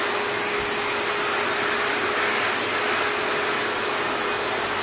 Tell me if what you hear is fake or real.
real